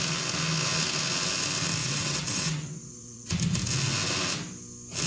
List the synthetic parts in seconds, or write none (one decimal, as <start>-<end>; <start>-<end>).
1.8-3.3